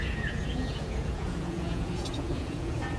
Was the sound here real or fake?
fake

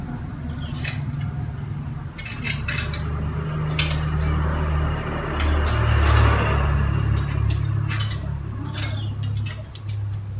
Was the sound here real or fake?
real